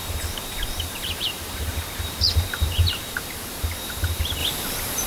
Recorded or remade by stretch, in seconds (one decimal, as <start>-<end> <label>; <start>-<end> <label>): 0.0-5.1 remade